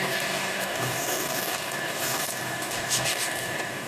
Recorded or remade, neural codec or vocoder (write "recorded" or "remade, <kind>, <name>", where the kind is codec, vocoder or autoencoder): remade, codec, DAC